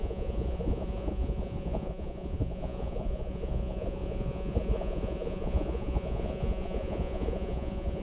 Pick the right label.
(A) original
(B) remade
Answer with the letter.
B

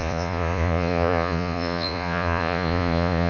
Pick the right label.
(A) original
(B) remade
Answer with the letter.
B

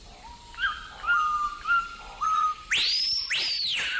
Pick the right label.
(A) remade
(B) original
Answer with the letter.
B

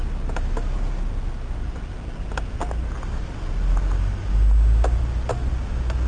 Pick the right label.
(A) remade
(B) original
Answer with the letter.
B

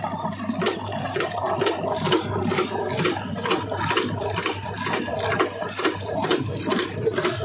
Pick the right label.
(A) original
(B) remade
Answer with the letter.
A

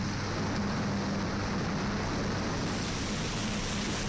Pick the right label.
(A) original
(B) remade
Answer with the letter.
A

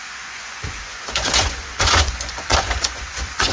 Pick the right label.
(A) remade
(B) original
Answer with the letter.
A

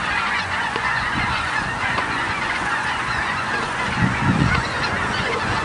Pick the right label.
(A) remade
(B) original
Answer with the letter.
A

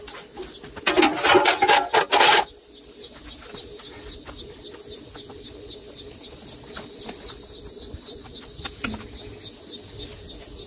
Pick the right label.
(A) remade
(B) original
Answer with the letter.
B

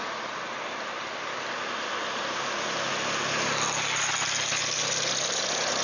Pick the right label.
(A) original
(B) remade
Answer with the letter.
A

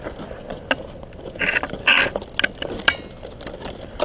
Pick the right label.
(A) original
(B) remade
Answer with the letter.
A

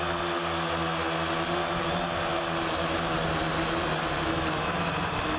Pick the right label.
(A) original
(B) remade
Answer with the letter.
A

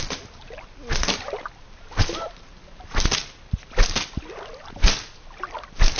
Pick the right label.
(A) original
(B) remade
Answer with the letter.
A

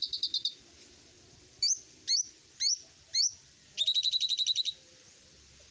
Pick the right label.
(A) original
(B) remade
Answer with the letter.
A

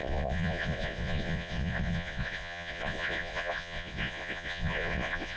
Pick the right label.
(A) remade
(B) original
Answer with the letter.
A